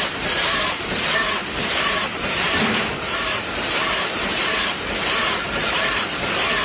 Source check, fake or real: fake